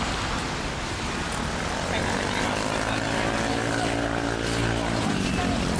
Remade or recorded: recorded